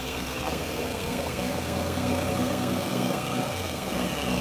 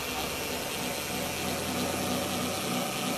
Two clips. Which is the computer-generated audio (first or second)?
first